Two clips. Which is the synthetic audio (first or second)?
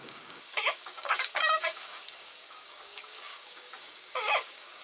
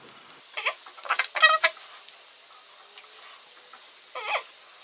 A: first